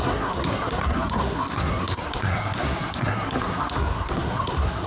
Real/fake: fake